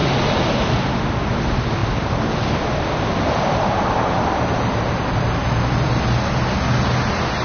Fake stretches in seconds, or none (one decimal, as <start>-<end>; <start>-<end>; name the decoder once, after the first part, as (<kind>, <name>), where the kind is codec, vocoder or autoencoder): none